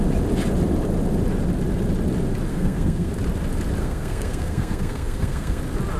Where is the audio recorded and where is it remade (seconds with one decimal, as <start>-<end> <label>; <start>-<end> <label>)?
0.0-2.5 recorded; 2.5-3.1 remade; 3.1-3.8 recorded; 3.8-5.6 remade; 5.6-6.0 recorded